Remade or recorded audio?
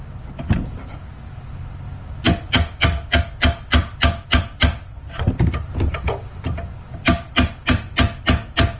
recorded